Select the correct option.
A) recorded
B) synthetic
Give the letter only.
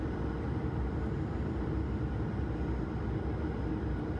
A